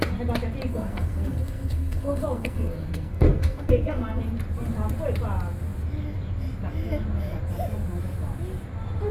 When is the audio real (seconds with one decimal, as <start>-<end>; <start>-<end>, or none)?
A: 0.0-0.7; 4.2-9.1

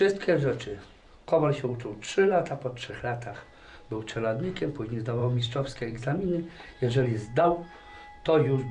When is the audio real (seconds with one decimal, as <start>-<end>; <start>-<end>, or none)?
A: 0.0-0.7; 2.9-5.2; 7.4-8.7

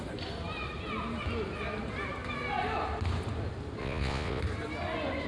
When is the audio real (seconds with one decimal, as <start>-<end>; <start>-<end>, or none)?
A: 0.0-3.8; 4.4-5.3

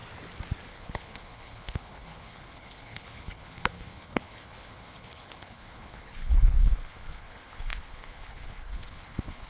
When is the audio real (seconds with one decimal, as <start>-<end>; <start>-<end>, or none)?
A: 0.0-0.7

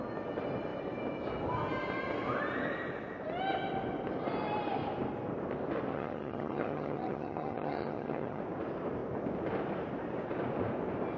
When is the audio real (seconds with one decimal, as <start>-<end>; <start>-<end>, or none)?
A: 0.0-5.9; 8.4-11.2

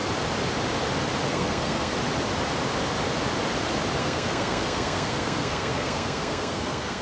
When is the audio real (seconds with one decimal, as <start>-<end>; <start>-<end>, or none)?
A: 0.0-1.3; 1.9-4.0